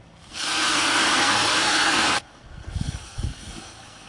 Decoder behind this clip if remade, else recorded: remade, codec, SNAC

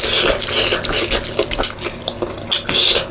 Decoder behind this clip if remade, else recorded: recorded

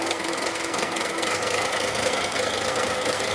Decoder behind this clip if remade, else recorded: remade, codec, SNAC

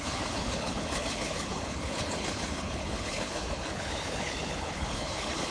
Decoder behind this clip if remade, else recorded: remade, codec, HILCodec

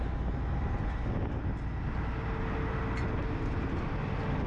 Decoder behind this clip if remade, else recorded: recorded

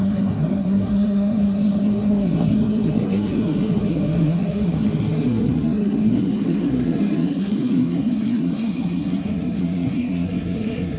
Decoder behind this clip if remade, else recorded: remade, codec, SNAC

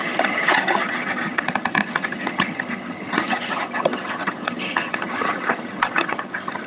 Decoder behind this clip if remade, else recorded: remade, vocoder, HiFi-GAN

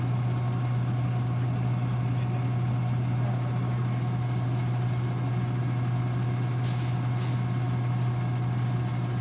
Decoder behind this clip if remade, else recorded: recorded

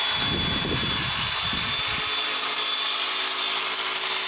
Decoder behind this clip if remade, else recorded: recorded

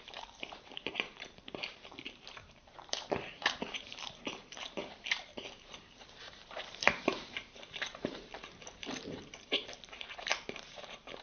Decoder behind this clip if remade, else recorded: remade, vocoder, BigVGAN v2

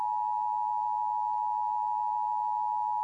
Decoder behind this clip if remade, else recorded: recorded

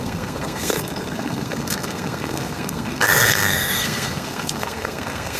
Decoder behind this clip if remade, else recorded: remade, codec, SNAC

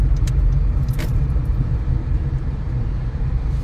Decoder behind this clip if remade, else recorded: remade, vocoder, BigVGAN v2